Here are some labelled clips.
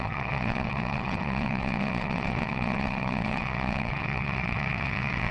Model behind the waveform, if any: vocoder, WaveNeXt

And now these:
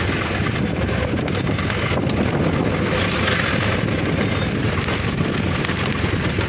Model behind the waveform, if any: none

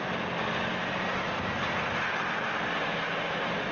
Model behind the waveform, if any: vocoder, BigVGAN v2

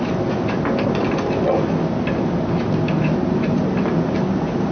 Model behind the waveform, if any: none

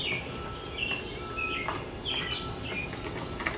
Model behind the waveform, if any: vocoder, BigVGAN v2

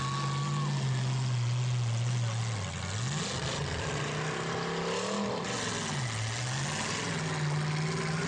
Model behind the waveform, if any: none